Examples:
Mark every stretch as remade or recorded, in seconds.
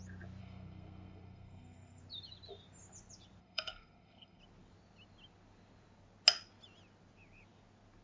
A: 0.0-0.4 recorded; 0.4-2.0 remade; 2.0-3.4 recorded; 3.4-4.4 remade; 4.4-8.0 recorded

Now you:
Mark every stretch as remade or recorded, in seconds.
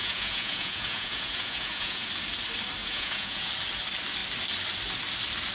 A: 0.0-2.1 remade; 2.1-2.8 recorded; 2.8-3.5 remade; 3.5-5.5 recorded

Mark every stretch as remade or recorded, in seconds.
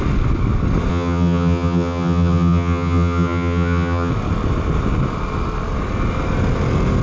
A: 0.0-0.9 recorded; 0.9-4.1 remade; 4.1-7.0 recorded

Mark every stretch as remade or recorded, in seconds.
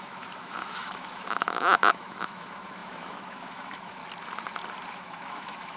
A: 0.0-4.0 remade; 4.0-4.9 recorded; 4.9-5.8 remade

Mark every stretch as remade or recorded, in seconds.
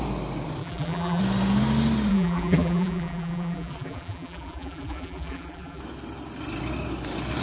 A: 0.0-0.6 recorded; 0.6-1.2 remade; 1.2-2.1 recorded; 2.1-5.8 remade; 5.8-7.4 recorded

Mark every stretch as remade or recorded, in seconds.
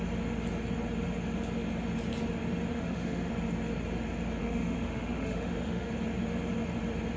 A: 0.0-2.7 recorded; 2.7-3.3 remade; 3.3-4.4 recorded; 4.4-5.9 remade; 5.9-7.2 recorded